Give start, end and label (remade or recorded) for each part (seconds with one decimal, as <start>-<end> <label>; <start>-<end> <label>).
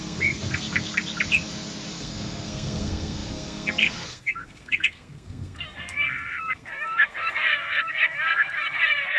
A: 0.0-1.0 remade; 1.0-1.9 recorded; 1.9-9.2 remade